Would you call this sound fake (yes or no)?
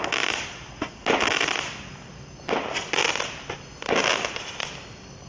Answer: no